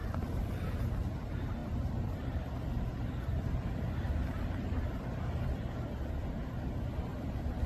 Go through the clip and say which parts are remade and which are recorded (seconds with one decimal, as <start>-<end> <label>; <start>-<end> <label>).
0.0-0.8 remade; 0.8-1.6 recorded; 1.6-6.1 remade; 6.1-7.1 recorded; 7.1-7.7 remade